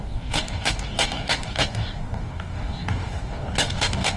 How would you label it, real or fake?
fake